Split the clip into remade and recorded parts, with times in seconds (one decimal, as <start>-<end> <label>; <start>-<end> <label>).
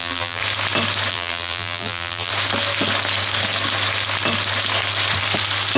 0.0-0.4 remade; 0.4-1.1 recorded; 1.1-2.3 remade; 2.3-5.8 recorded